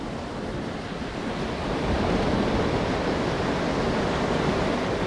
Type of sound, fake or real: real